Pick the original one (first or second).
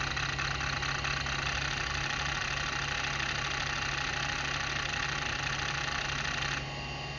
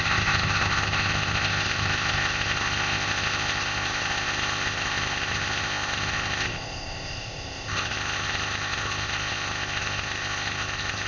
first